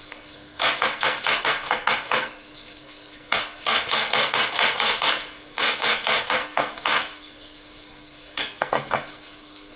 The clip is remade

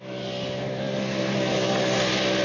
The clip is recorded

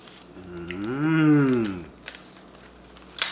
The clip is recorded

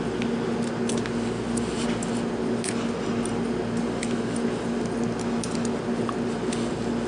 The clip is recorded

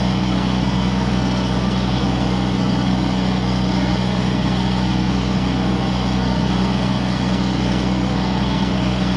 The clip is remade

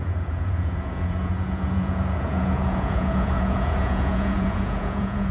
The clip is remade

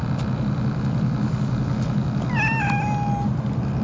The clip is recorded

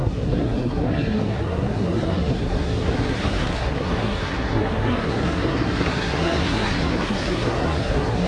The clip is remade